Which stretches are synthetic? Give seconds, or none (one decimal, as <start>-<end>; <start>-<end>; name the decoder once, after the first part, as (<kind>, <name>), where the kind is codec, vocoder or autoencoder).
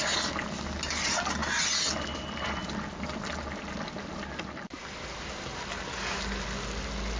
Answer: none